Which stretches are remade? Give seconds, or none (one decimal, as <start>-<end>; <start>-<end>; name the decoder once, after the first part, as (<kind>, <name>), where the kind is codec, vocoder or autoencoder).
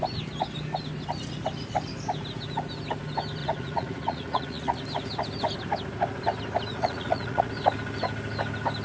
3.4-4.8 (vocoder, Vocos); 6.7-7.5